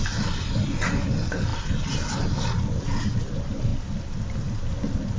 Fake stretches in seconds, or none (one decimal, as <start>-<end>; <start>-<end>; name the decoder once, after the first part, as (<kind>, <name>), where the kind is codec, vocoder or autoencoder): none